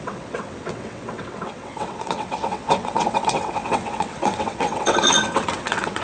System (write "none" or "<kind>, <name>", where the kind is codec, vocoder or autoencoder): vocoder, WaveNeXt